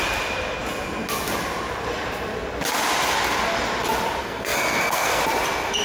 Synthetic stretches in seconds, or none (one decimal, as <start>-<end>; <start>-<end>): 4.2-5.2